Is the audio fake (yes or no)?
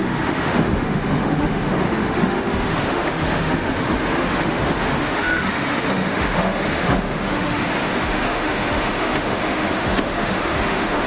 yes